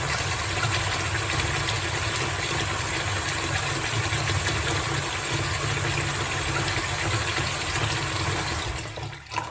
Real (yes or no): yes